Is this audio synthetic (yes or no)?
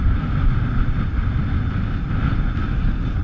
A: no